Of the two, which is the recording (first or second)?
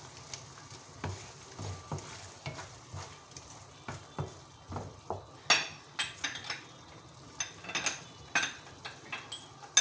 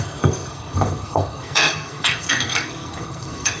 first